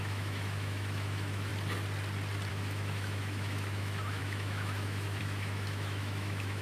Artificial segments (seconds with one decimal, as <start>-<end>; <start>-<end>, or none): 0.0-1.5; 2.5-6.6